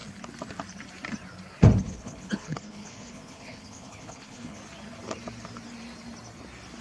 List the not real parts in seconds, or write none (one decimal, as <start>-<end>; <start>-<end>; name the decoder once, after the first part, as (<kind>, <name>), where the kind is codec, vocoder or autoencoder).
1.8-4.6 (codec, HILCodec)